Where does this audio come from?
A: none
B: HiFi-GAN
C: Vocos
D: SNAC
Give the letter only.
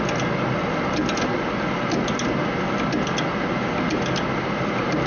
A